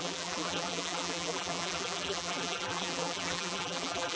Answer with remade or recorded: remade